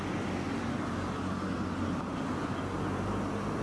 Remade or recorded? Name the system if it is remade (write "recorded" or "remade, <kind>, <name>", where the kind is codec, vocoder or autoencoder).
recorded